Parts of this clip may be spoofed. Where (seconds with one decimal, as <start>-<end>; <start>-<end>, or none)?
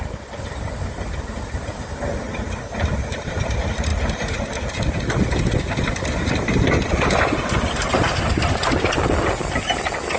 none